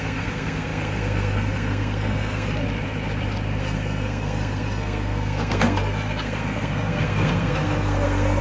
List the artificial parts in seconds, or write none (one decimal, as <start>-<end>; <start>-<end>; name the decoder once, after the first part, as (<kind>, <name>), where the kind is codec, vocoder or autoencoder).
0.0-2.6 (codec, SNAC); 3.6-8.4